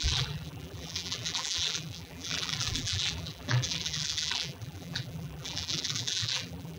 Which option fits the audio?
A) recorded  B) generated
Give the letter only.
B